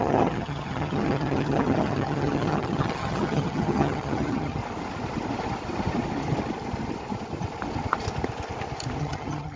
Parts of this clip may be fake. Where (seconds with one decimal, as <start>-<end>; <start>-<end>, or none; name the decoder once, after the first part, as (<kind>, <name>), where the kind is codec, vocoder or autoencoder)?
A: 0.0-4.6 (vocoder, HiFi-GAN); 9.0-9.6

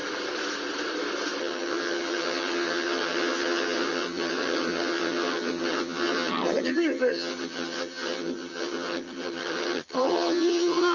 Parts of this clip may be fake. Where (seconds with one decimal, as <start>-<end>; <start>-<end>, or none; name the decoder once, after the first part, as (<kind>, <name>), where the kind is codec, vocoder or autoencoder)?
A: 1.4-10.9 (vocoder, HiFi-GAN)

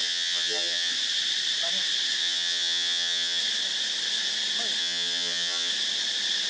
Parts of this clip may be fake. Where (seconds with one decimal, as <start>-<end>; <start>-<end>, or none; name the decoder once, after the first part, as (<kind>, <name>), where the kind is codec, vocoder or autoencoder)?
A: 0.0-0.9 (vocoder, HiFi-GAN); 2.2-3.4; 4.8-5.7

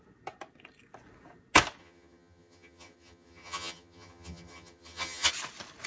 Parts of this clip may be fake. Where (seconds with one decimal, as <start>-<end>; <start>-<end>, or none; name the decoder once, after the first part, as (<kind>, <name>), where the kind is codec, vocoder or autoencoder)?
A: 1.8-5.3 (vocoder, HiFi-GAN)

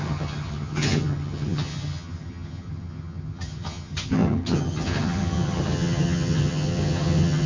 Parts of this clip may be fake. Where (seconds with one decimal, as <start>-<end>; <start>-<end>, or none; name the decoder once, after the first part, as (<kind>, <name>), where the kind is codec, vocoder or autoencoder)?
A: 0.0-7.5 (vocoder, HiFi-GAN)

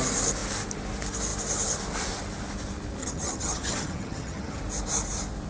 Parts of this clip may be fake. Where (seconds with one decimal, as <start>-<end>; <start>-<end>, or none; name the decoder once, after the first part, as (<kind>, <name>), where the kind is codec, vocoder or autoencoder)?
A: 3.0-4.6 (vocoder, HiFi-GAN)

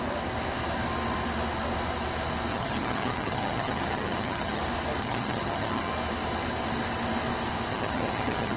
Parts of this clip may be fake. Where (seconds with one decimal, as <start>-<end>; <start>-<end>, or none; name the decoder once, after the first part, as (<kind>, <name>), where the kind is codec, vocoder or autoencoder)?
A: 2.5-4.6 (vocoder, HiFi-GAN); 5.0-5.9; 7.7-8.6

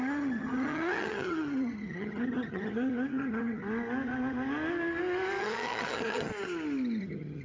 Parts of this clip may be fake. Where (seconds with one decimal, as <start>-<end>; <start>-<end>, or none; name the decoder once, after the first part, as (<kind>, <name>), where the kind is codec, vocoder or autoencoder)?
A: 0.0-3.6 (vocoder, HiFi-GAN); 5.4-6.3; 7.0-7.4